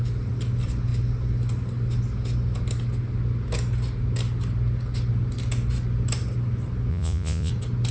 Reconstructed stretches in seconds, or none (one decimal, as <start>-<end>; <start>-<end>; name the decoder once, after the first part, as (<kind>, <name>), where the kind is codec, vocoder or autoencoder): 6.9-7.5 (vocoder, Vocos)